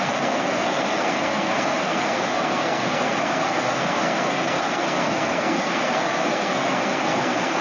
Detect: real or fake fake